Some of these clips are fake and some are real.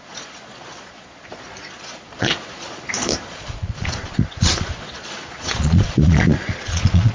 fake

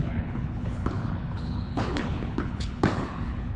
fake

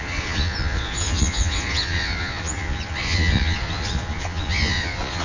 fake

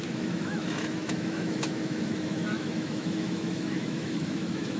fake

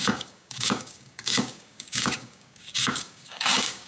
fake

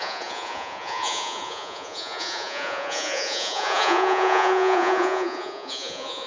fake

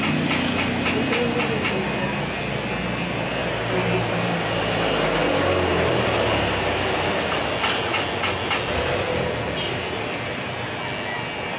real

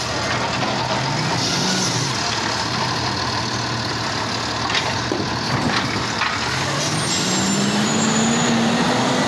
real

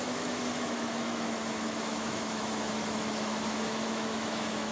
fake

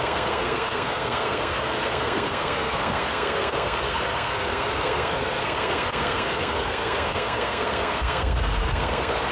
fake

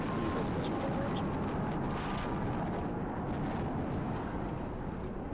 real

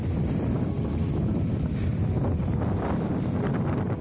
real